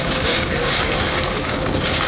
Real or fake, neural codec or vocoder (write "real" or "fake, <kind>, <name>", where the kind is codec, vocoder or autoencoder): fake, codec, DAC